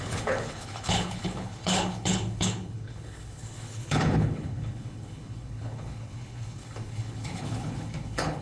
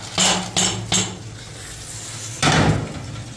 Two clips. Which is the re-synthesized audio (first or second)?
first